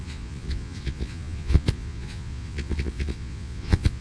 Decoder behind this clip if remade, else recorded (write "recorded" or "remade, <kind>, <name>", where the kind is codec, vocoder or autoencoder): remade, vocoder, Vocos